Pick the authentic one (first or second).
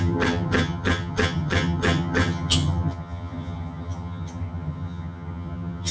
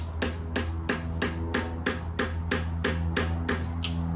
second